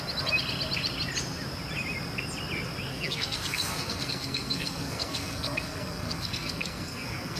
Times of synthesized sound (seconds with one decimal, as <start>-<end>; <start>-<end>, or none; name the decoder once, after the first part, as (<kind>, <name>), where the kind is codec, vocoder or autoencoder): 2.9-7.4 (codec, SNAC)